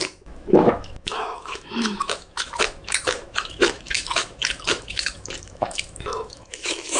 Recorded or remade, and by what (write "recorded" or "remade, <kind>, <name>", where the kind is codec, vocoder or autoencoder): remade, autoencoder, DAC-VAE